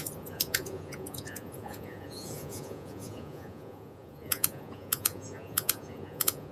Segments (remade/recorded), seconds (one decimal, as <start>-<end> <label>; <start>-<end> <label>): 0.0-6.5 remade